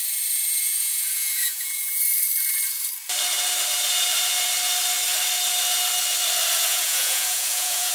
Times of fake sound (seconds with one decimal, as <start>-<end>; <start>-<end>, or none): 0.6-2.0; 6.7-7.9